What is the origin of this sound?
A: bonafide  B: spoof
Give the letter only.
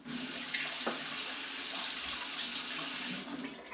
A